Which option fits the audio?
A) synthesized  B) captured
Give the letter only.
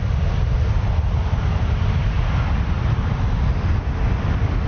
B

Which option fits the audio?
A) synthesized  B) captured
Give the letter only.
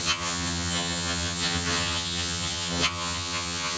A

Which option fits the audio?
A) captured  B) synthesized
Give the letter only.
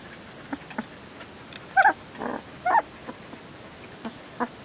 A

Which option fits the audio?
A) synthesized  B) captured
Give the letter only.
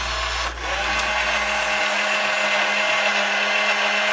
B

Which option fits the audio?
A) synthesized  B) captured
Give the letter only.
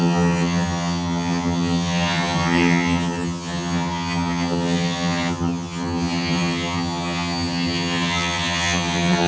A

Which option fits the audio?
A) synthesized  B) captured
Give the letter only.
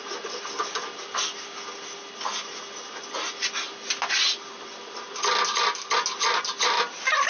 B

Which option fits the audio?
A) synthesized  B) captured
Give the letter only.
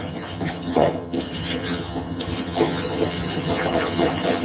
A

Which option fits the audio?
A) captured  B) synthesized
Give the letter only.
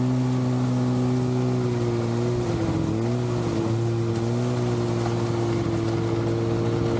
A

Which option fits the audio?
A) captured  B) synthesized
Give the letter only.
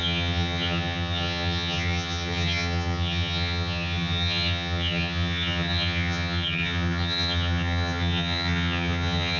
B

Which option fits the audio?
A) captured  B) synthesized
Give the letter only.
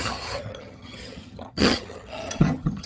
B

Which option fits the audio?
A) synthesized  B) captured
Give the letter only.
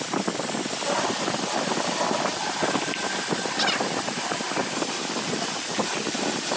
B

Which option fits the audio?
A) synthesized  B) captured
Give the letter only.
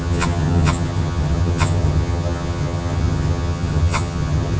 A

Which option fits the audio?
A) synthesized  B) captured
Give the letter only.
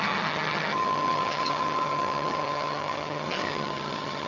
A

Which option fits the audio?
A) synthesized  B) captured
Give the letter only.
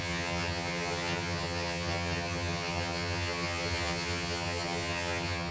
A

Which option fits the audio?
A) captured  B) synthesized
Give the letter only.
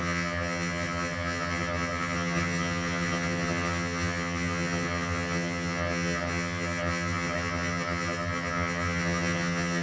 B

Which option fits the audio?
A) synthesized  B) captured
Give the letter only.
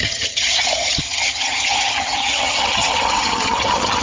A